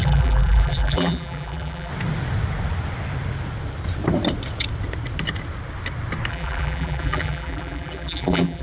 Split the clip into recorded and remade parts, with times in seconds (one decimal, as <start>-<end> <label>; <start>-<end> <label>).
0.0-1.9 remade; 1.9-6.3 recorded; 6.3-8.6 remade